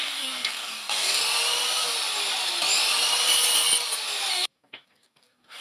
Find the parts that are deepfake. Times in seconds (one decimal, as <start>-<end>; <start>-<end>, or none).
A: 0.0-1.2; 4.3-5.6